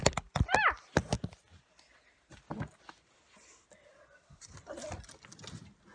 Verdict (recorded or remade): recorded